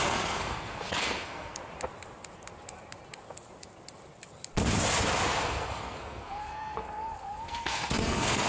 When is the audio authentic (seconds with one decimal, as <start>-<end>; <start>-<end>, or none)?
1.6-5.4